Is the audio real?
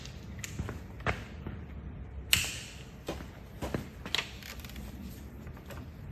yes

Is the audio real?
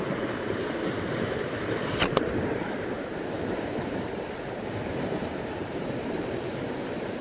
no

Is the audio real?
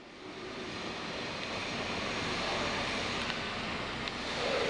yes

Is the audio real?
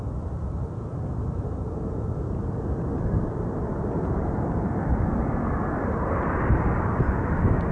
yes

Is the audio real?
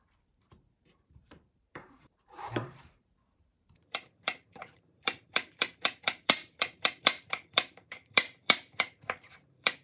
no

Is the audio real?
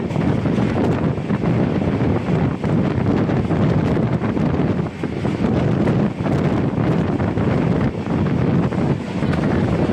yes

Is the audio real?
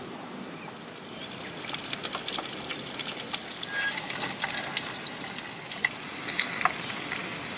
yes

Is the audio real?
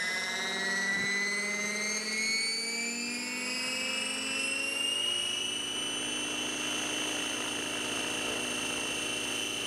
yes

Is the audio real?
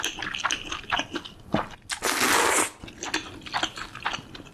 yes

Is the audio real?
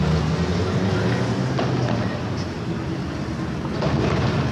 yes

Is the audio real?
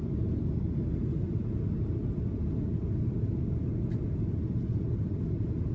yes